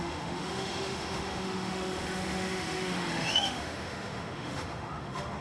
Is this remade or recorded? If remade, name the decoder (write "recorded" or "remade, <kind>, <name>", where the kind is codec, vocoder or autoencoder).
remade, autoencoder, DAC-VAE